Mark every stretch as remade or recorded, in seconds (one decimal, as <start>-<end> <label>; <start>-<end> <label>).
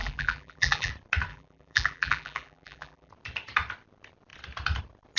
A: 0.0-0.9 remade; 0.9-1.3 recorded; 1.3-3.1 remade; 3.1-5.2 recorded